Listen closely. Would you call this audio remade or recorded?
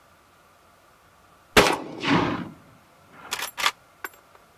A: recorded